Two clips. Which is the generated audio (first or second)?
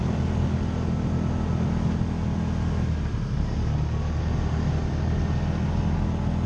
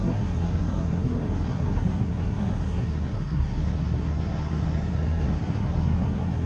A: second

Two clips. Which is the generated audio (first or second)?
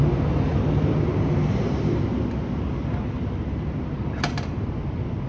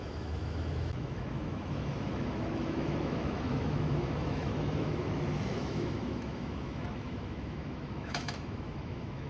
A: second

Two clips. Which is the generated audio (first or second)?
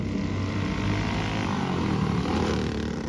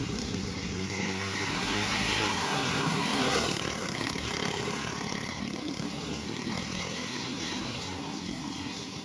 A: second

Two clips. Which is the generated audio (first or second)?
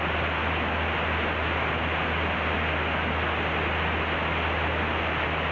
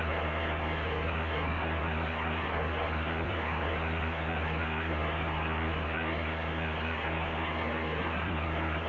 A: second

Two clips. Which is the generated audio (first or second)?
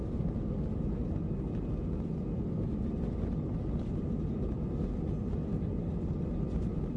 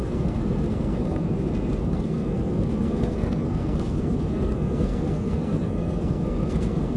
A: second